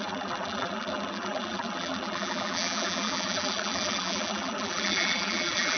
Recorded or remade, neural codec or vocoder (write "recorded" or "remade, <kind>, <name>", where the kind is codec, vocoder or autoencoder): remade, vocoder, BigVGAN v2